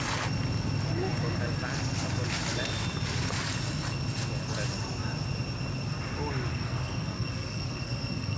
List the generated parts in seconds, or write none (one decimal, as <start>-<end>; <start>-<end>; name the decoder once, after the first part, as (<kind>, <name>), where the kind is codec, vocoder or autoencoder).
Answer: 6.5-8.4 (codec, SNAC)